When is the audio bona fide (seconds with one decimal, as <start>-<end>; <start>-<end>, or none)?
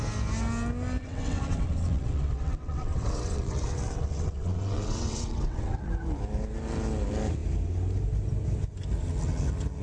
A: 0.0-1.0; 5.9-9.8